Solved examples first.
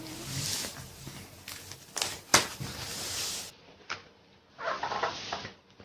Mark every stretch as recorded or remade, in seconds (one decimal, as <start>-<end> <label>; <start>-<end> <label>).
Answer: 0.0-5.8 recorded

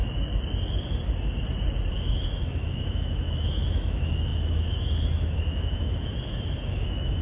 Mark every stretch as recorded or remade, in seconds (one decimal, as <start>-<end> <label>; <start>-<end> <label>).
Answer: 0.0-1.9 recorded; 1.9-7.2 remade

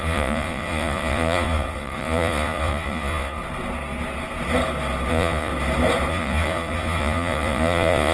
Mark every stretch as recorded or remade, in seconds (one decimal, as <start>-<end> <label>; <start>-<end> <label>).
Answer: 0.0-3.4 remade; 3.4-5.1 recorded; 5.1-5.5 remade; 5.5-6.1 recorded; 6.1-8.1 remade

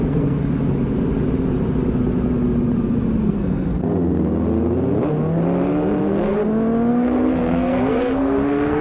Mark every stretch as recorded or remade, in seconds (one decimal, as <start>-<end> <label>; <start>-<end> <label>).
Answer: 0.0-0.4 remade; 0.4-3.3 recorded; 3.3-3.8 remade; 3.8-6.0 recorded; 6.0-6.4 remade; 6.4-6.9 recorded; 6.9-8.8 remade

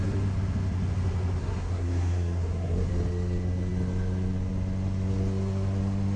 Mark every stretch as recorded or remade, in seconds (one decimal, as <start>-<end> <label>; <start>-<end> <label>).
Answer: 0.0-1.4 recorded; 1.4-2.9 remade; 2.9-6.2 recorded

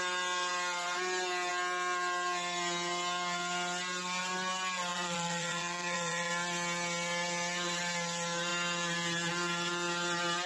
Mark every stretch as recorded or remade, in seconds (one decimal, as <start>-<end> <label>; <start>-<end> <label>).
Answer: 0.0-4.9 recorded; 4.9-6.3 remade; 6.3-10.5 recorded

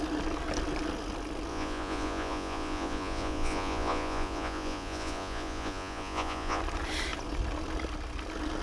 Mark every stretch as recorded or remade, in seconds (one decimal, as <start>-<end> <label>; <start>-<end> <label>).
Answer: 0.0-1.5 recorded; 1.5-6.6 remade; 6.6-8.6 recorded

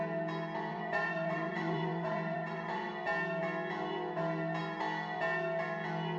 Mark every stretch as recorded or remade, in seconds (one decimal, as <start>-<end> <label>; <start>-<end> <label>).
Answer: 0.0-0.7 recorded; 0.7-2.9 remade; 2.9-6.2 recorded